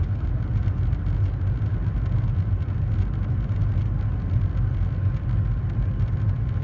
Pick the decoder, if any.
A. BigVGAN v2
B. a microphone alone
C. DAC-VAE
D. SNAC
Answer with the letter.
B